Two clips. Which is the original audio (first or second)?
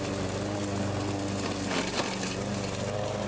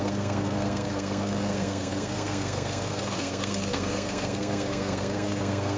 first